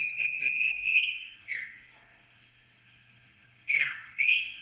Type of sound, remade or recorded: remade